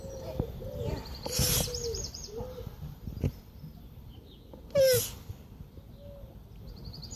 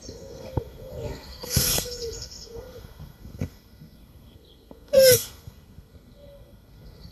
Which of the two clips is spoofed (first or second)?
second